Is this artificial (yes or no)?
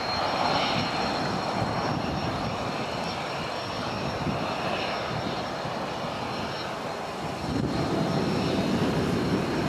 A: no